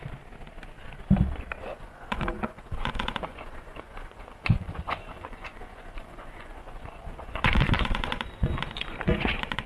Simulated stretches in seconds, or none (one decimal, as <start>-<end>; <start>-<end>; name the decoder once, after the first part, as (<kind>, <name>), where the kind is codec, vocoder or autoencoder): 1.6-9.7 (vocoder, Vocos)